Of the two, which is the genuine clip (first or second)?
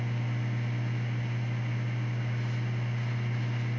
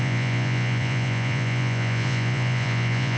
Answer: first